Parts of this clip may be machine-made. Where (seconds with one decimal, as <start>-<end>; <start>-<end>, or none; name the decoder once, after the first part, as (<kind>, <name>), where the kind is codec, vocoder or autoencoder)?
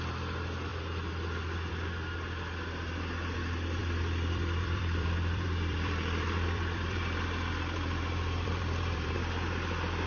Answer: 3.8-9.1 (vocoder, BigVGAN v2)